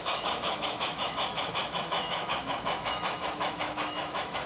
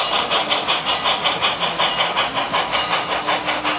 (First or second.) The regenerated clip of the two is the first